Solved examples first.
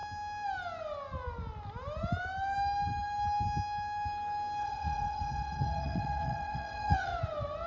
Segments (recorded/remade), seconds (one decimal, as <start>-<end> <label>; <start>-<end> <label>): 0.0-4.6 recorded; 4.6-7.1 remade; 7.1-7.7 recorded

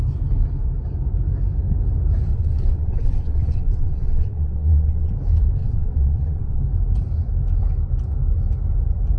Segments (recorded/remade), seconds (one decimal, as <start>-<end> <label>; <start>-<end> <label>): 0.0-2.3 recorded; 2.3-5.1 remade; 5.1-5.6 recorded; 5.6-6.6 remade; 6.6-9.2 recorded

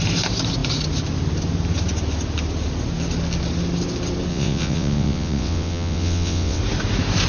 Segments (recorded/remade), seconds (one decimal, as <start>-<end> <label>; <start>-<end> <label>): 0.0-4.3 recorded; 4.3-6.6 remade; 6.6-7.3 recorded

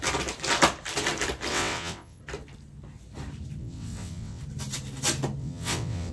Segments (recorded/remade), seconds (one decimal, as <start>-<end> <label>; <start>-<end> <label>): 0.0-1.5 recorded; 1.5-2.2 remade; 2.2-3.6 recorded; 3.6-4.4 remade; 4.4-5.4 recorded; 5.4-6.1 remade

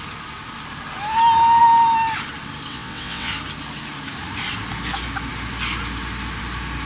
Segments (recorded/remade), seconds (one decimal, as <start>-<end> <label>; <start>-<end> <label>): 0.0-2.7 recorded; 2.7-3.3 remade; 3.3-6.9 recorded

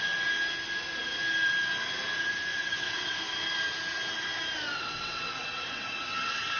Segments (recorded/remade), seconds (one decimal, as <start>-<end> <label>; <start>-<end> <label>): 0.0-2.5 recorded; 2.5-3.2 remade; 3.2-4.7 recorded; 4.7-6.6 remade

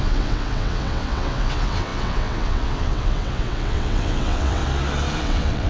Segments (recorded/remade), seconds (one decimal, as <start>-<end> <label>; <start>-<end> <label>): 0.0-4.6 remade; 4.6-5.2 recorded; 5.2-5.7 remade

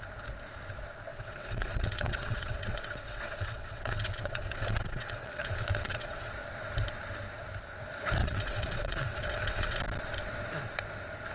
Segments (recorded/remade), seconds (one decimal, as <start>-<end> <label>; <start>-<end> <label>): 0.0-1.1 recorded; 1.1-6.3 remade; 6.3-8.2 recorded; 8.2-9.8 remade; 9.8-11.3 recorded